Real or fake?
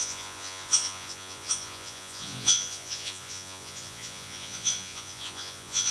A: fake